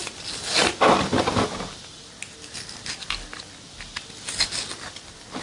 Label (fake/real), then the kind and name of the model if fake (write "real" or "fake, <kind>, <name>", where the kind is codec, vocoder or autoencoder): real